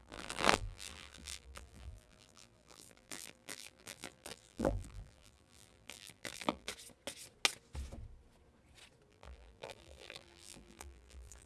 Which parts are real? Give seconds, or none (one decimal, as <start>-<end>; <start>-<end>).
6.7-9.1